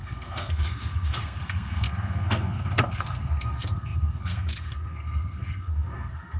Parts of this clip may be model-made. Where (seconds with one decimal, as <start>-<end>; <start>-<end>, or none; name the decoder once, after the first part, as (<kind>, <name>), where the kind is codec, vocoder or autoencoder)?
0.0-6.4 (codec, SNAC)